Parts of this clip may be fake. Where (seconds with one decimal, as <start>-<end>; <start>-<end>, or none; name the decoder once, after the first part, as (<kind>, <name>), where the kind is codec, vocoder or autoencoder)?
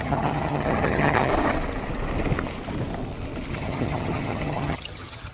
0.0-1.3 (vocoder, HiFi-GAN); 3.5-5.3